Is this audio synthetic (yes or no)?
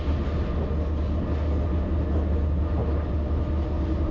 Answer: no